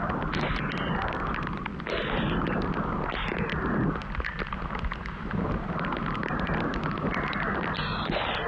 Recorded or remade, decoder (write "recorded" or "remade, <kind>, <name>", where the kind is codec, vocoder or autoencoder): recorded